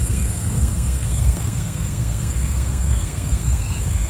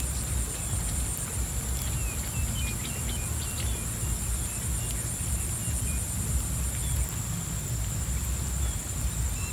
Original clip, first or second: second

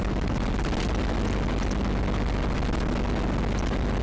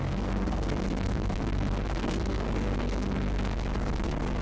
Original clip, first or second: first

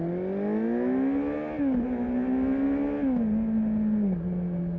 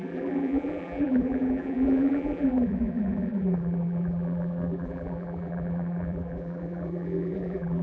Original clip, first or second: first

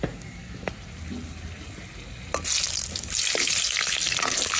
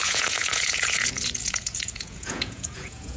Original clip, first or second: first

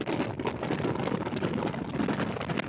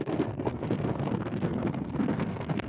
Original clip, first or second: first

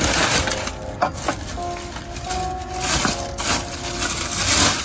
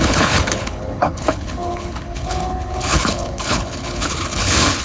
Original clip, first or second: first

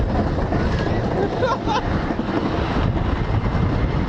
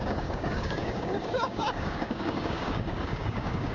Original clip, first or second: first